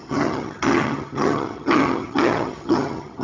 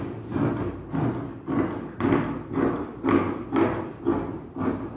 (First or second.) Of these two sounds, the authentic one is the second